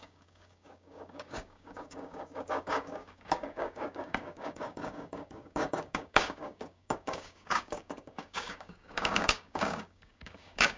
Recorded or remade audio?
remade